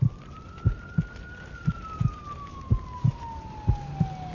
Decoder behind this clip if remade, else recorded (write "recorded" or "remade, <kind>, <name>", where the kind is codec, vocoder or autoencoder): recorded